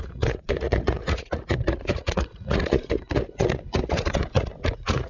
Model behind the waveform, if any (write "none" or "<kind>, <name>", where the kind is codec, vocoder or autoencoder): vocoder, Vocos